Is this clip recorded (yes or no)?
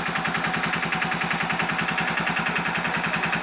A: yes